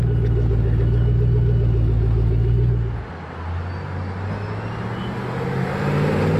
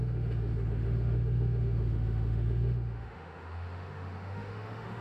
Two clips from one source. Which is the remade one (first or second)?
second